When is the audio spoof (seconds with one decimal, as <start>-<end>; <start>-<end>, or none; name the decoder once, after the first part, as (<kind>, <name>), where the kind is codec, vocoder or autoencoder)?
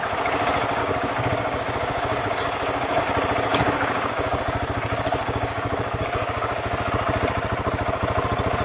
0.8-3.0 (codec, DAC); 3.5-6.9